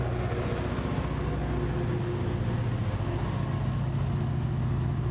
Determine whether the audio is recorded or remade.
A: recorded